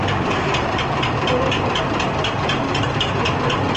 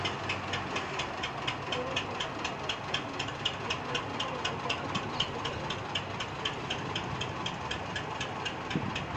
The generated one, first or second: first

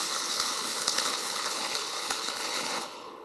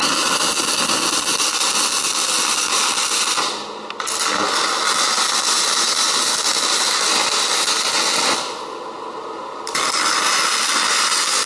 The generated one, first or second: first